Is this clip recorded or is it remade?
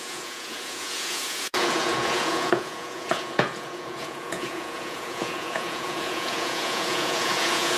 remade